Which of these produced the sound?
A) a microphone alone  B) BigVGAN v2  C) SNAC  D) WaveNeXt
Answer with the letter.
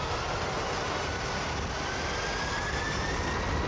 A